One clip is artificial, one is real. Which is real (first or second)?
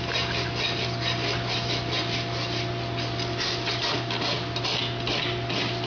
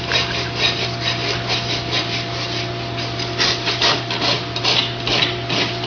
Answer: first